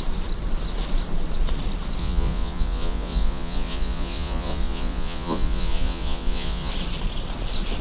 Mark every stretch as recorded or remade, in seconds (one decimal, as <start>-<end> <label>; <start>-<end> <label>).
0.0-2.0 recorded; 2.0-6.7 remade; 6.7-7.8 recorded